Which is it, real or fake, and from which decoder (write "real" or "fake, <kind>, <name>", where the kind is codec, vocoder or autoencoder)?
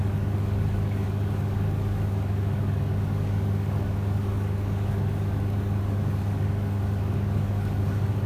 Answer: fake, codec, DAC